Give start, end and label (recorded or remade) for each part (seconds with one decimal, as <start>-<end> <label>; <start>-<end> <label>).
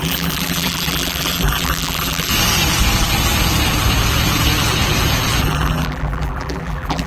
0.0-2.3 remade; 2.3-5.4 recorded; 5.4-7.1 remade